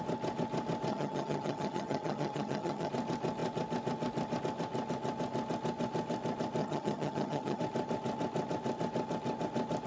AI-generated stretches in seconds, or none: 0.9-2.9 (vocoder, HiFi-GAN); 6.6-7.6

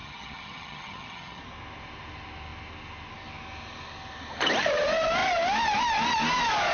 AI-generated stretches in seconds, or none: 0.0-1.4 (vocoder, HiFi-GAN)

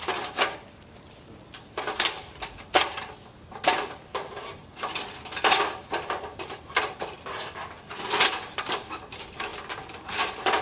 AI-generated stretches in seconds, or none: none

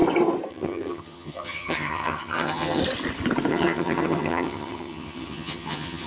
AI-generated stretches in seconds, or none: 0.5-2.8 (vocoder, HiFi-GAN); 3.5-6.1

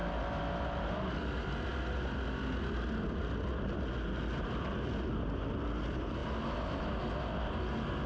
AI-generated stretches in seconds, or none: none

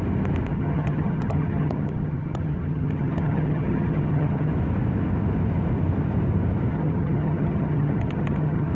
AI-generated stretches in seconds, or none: 0.5-4.5 (vocoder, HiFi-GAN); 6.7-8.7

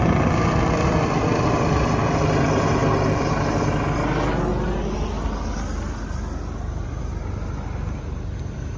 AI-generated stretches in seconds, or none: none

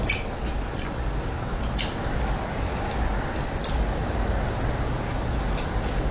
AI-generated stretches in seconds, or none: none